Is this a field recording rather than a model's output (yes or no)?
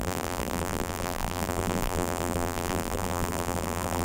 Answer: no